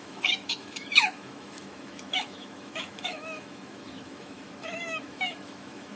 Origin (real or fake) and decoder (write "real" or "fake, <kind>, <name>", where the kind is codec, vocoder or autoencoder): fake, autoencoder, DAC-VAE